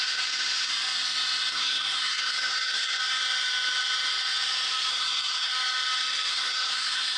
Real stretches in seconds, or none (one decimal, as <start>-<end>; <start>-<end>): 0.7-1.5; 3.0-4.9; 5.5-6.3